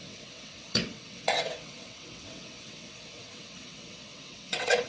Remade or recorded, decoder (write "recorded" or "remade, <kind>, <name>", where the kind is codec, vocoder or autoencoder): remade, vocoder, WaveNeXt